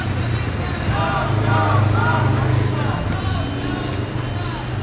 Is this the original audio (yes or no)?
yes